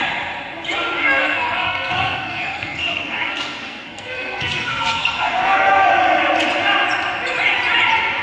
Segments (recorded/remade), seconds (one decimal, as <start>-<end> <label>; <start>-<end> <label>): 0.0-1.0 recorded; 1.0-5.9 remade; 5.9-8.2 recorded